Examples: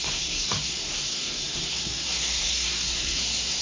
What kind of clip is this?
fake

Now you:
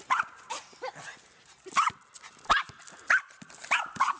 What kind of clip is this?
real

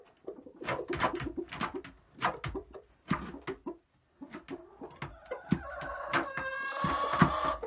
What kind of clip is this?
real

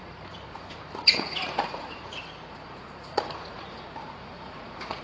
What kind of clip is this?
fake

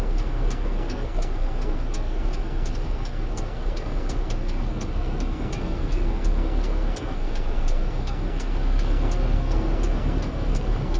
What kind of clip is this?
fake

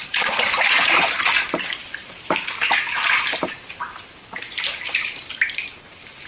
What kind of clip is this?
fake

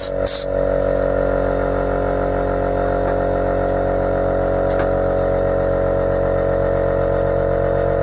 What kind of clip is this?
real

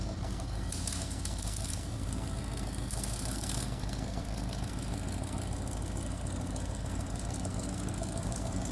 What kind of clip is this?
fake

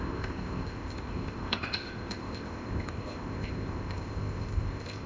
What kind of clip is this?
fake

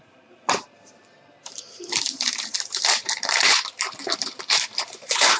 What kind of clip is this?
fake